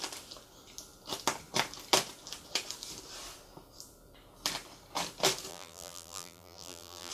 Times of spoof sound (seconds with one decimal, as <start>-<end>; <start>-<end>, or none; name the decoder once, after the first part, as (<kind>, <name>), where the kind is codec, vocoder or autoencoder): 5.5-7.1 (vocoder, BigVGAN v2)